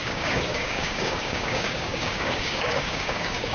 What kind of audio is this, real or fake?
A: fake